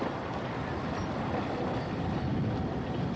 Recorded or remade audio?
recorded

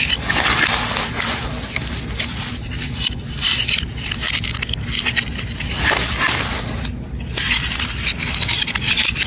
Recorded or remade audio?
recorded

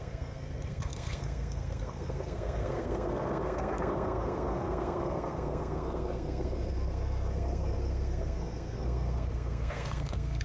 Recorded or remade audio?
remade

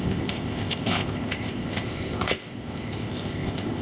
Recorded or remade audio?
remade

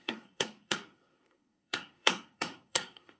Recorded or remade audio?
remade